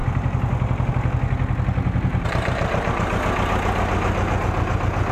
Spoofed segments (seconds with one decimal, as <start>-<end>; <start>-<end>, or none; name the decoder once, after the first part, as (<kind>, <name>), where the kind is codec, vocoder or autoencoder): 0.0-0.9 (vocoder, BigVGAN v2); 2.1-2.9